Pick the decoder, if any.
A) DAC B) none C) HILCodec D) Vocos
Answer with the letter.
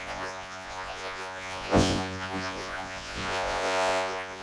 D